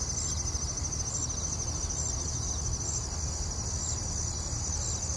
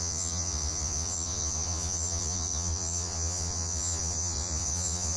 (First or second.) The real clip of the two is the first